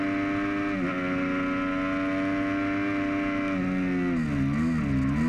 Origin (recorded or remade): recorded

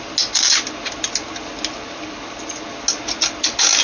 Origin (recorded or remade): recorded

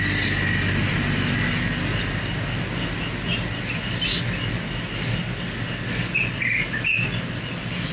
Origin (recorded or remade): recorded